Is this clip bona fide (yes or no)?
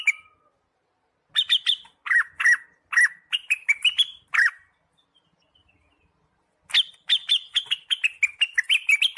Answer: yes